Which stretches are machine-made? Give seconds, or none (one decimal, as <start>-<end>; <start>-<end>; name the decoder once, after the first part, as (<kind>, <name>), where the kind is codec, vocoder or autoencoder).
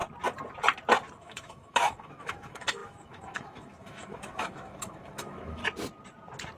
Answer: 1.2-5.6 (autoencoder, DAC-VAE)